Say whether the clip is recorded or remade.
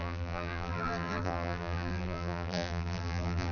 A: remade